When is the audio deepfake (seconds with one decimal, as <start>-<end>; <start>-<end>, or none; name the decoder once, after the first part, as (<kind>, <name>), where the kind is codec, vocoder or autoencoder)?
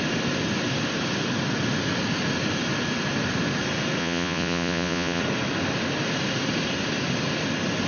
4.0-5.2 (vocoder, Vocos)